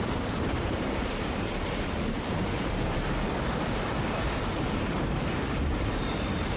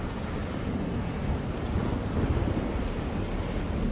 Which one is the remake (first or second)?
first